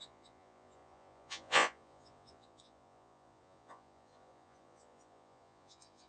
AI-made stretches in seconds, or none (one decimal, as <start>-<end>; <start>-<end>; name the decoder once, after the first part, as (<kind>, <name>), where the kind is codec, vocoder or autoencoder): 0.0-6.1 (vocoder, Vocos)